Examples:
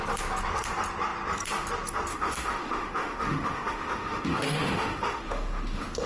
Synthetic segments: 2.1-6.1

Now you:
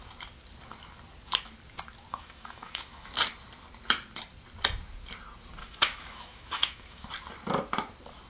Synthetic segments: 2.1-3.1; 5.6-7.1